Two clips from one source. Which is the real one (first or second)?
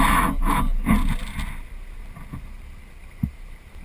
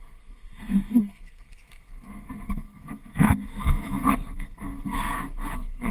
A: first